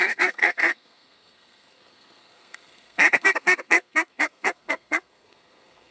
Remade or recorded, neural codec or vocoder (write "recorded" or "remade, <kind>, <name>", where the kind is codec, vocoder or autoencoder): remade, codec, SNAC